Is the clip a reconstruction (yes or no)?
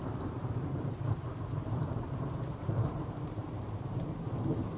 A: yes